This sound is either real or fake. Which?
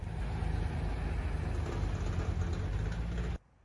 real